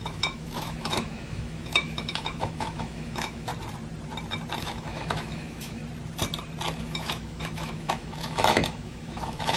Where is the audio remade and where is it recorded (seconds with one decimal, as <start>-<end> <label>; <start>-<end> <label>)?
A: 0.0-3.5 remade; 3.5-4.6 recorded; 4.6-5.8 remade; 5.8-6.8 recorded; 6.8-9.6 remade